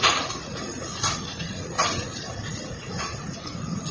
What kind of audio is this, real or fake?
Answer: fake